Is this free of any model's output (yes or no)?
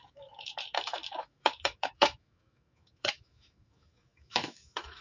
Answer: no